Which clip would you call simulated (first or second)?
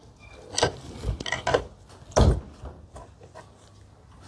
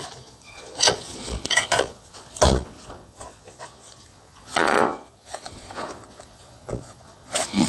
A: second